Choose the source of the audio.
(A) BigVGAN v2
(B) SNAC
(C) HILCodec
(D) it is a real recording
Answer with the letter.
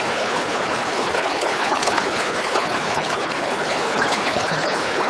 C